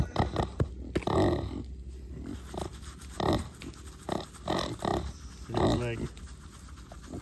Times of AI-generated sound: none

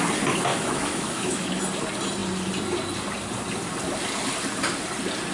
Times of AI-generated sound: 0.5-1.6

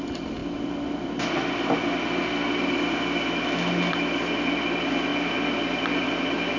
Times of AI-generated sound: none